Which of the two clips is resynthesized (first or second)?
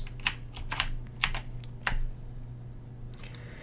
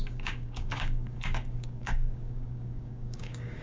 second